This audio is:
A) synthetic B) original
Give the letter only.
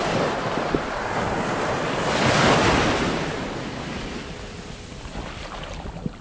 B